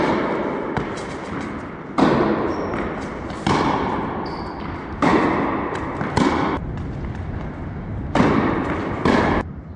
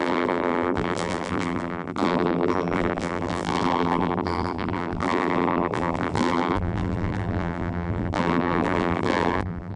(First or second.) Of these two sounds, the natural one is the first